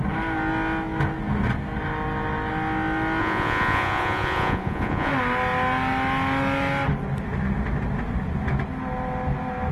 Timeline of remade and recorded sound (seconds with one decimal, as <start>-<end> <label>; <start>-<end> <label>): 0.0-3.2 recorded; 3.2-5.1 remade; 5.1-9.7 recorded